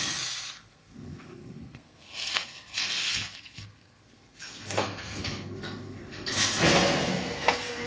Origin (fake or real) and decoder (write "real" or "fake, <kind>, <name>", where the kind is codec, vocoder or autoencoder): fake, codec, SNAC